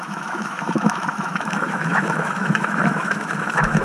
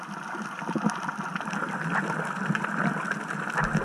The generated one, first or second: first